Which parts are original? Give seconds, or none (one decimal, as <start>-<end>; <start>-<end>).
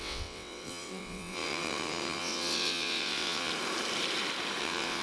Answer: 3.5-4.6